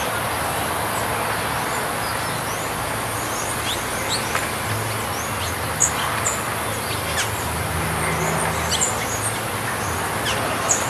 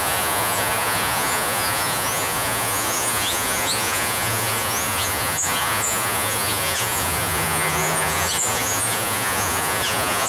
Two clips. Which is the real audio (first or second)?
first